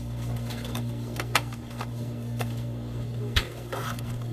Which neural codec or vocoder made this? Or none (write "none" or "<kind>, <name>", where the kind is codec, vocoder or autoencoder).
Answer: codec, SNAC